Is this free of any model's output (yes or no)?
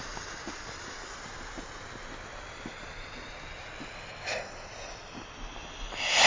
yes